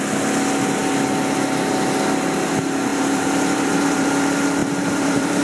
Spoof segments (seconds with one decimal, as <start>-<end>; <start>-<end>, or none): 2.9-4.1; 4.6-5.4

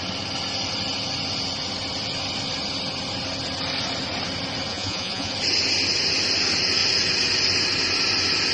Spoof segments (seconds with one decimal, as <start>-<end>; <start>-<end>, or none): 4.7-5.3

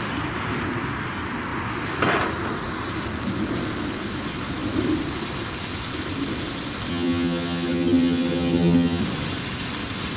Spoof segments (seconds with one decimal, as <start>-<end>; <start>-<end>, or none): 6.9-9.0

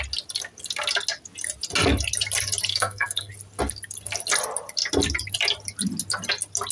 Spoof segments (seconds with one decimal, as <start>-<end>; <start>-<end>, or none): 2.7-3.3